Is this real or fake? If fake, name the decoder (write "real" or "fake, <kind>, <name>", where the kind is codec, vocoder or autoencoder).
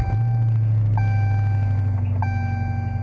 real